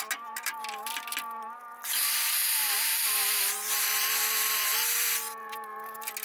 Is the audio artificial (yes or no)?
no